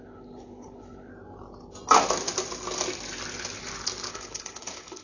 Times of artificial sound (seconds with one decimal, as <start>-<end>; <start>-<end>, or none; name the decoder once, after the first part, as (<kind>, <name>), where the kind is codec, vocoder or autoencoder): 0.0-1.1 (codec, HILCodec); 4.1-5.0